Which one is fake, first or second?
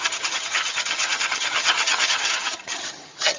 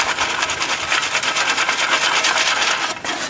first